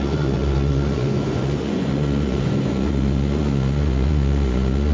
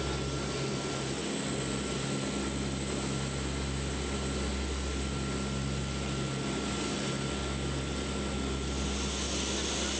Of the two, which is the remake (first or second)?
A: first